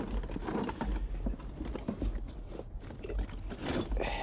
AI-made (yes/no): no